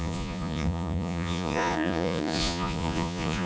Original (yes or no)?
no